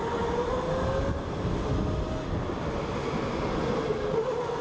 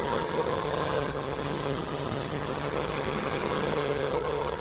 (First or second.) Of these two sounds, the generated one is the second